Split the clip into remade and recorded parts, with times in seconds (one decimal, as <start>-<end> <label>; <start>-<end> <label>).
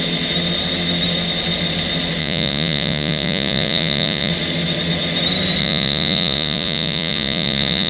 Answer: 0.0-2.2 recorded; 2.2-4.3 remade; 4.3-5.6 recorded; 5.6-7.9 remade